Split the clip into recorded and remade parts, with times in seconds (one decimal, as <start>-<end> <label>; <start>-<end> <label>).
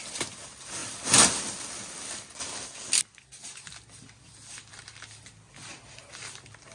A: 0.0-6.7 recorded